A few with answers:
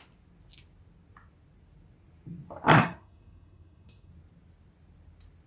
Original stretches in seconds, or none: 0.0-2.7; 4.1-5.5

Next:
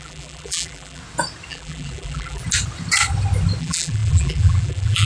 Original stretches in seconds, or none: 1.0-1.5; 2.4-3.6